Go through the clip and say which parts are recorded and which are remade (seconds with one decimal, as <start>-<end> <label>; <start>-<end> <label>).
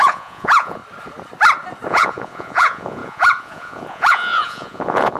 0.0-0.8 remade; 0.8-1.9 recorded; 1.9-5.2 remade